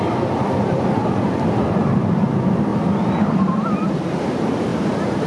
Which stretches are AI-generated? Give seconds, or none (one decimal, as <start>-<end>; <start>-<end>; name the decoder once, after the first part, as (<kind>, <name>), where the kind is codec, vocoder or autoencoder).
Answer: none